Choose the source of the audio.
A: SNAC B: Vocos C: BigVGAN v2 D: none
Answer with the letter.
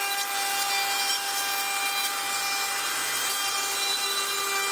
D